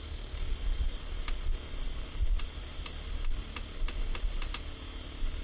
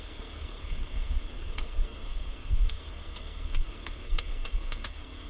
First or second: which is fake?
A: second